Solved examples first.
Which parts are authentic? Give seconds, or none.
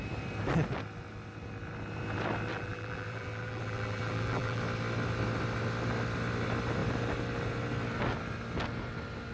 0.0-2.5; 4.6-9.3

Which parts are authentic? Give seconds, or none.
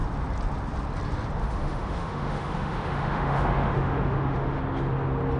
0.0-1.4; 4.6-5.4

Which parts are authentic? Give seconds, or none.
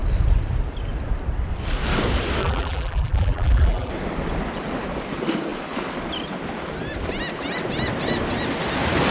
0.0-2.4; 3.9-9.1